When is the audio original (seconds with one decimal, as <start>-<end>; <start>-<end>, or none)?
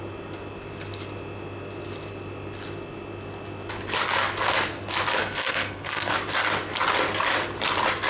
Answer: 0.0-5.2; 6.1-8.1